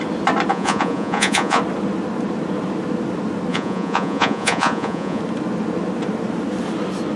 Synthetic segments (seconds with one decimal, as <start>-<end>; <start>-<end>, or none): 0.5-1.6; 3.5-5.2